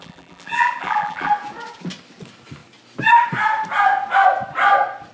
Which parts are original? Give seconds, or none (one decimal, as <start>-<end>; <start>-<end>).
1.3-5.1